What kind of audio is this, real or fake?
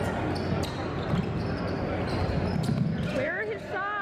real